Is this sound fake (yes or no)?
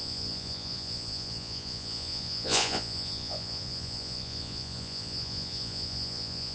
yes